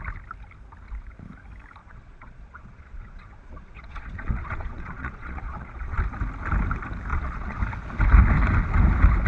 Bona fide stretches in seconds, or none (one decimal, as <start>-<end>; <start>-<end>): 0.0-1.8; 6.0-7.1; 7.6-9.3